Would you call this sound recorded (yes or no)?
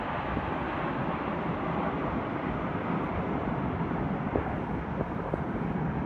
yes